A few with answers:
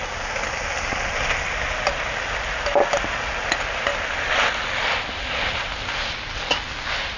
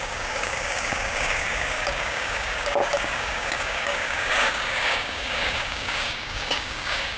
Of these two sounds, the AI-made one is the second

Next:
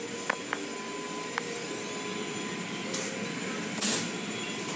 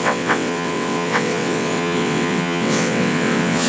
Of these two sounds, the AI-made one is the second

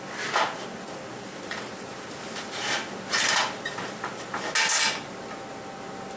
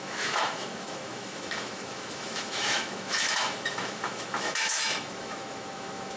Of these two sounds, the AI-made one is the second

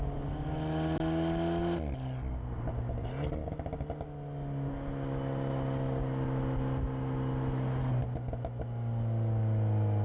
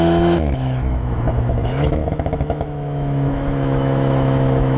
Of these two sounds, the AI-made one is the second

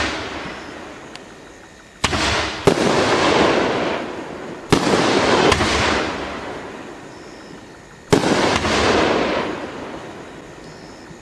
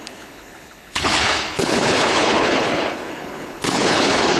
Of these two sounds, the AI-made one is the second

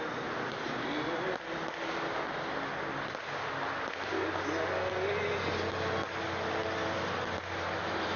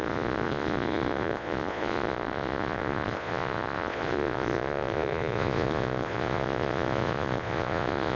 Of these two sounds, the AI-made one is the second